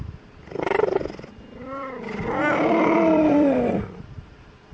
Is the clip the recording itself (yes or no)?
no